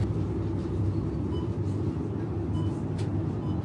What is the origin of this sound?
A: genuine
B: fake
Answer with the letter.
A